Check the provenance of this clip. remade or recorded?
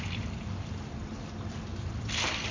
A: recorded